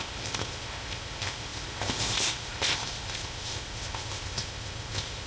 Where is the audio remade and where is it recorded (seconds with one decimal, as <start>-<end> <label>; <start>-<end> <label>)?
0.0-5.3 remade